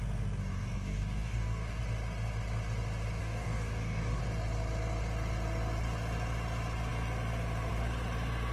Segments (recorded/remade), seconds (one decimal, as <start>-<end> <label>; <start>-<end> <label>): 0.0-0.4 recorded; 0.4-1.8 remade; 1.8-3.2 recorded; 3.2-4.2 remade; 4.2-8.5 recorded